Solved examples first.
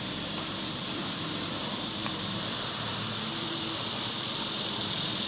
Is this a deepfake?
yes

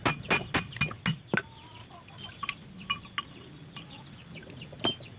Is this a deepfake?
no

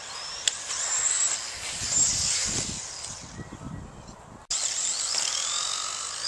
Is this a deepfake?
no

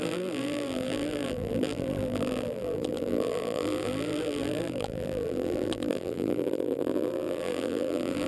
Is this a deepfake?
yes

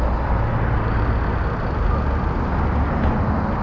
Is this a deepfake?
no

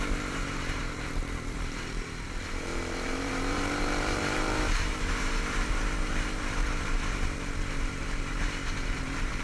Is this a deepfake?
yes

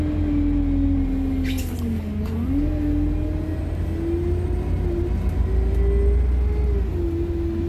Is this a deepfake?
no